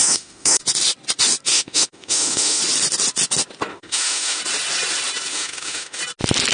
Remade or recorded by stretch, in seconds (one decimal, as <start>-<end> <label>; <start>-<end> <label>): 0.0-0.6 remade; 0.6-1.5 recorded; 1.5-2.6 remade; 2.6-3.7 recorded; 3.7-4.4 remade; 4.4-5.3 recorded; 5.3-6.0 remade; 6.0-6.5 recorded